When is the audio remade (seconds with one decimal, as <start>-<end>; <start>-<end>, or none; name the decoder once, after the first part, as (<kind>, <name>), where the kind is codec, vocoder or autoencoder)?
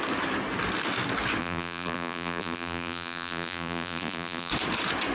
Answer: 1.4-4.5 (vocoder, BigVGAN v2)